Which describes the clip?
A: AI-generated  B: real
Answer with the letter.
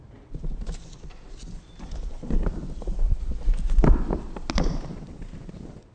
B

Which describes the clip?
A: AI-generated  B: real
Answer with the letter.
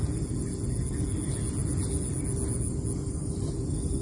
B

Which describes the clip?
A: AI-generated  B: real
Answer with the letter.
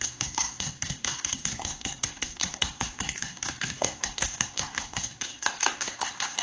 A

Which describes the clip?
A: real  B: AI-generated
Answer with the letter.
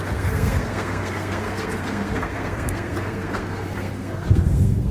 B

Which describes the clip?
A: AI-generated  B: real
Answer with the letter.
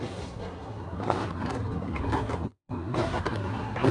A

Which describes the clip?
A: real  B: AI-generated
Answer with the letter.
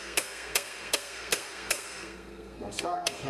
B